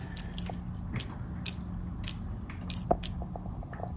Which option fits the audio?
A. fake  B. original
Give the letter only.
B